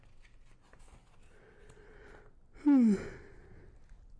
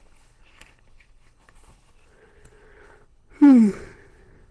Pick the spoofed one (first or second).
second